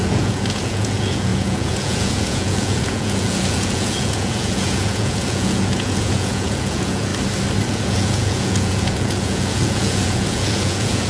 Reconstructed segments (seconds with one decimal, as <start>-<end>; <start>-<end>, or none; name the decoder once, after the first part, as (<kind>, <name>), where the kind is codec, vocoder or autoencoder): 0.0-7.1 (vocoder, Vocos); 7.7-11.1